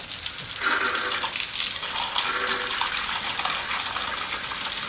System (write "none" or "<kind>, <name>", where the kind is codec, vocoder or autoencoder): none